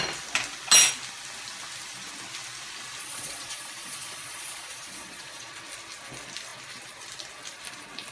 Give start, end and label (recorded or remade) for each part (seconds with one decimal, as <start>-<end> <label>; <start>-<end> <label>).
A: 0.0-3.0 recorded; 3.0-5.6 remade; 5.6-8.1 recorded